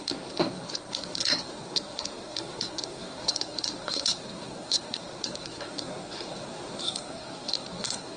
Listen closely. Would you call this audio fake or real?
fake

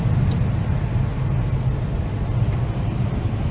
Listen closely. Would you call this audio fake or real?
real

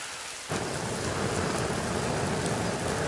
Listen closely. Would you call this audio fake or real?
real